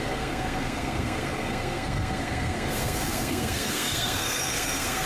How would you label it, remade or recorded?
remade